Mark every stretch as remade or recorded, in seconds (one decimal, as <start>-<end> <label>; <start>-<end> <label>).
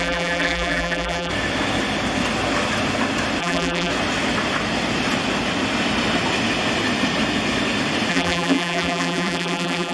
0.0-1.3 remade; 1.3-3.4 recorded; 3.4-3.9 remade; 3.9-8.1 recorded; 8.1-9.9 remade